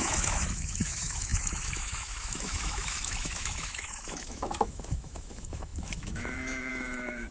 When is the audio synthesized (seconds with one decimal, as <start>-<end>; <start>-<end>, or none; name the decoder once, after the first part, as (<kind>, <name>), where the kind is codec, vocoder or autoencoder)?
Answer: 0.0-7.3 (autoencoder, DAC-VAE)